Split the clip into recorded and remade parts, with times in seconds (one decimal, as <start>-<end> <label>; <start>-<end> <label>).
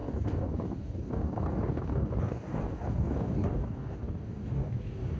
0.0-5.2 remade